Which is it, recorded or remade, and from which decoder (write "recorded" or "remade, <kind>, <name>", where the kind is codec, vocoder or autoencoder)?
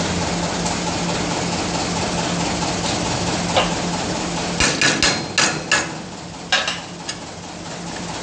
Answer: recorded